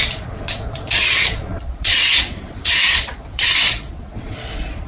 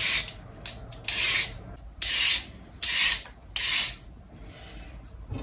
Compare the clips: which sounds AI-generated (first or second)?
first